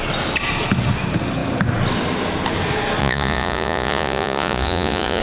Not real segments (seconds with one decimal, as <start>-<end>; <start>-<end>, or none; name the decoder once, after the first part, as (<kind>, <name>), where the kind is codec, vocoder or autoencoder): 3.0-5.2 (vocoder, Vocos)